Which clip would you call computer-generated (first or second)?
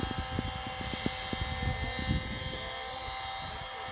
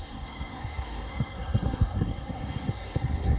second